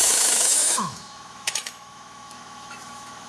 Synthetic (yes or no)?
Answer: yes